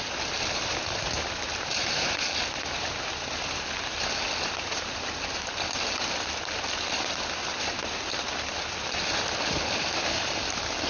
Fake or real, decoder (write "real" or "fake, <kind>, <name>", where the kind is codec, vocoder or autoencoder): real